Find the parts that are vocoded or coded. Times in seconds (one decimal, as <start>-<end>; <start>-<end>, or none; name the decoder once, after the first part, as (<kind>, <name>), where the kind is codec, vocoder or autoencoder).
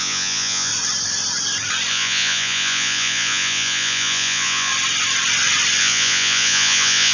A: 0.0-0.7 (vocoder, Vocos); 1.9-4.7; 5.8-7.1